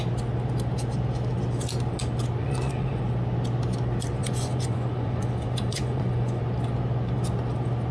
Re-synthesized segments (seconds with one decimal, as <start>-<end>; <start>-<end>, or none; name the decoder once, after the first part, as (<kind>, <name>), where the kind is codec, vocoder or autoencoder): 2.4-3.0 (vocoder, Vocos); 4.2-6.4